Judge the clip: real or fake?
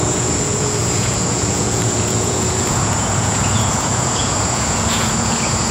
fake